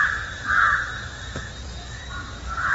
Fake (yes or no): no